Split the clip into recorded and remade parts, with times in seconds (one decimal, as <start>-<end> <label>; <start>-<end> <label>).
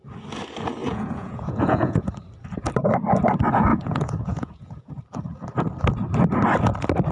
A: 0.0-0.8 recorded; 0.8-2.1 remade; 2.1-3.7 recorded; 3.7-5.0 remade; 5.0-7.1 recorded